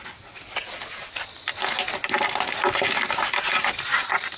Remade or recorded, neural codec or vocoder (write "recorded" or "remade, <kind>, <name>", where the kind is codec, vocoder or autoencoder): recorded